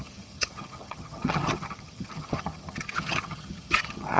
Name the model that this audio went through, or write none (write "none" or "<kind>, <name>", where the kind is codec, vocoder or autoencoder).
vocoder, HiFi-GAN